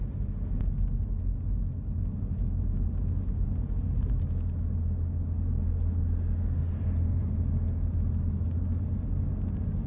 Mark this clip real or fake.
real